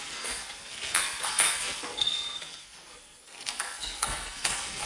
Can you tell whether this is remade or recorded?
remade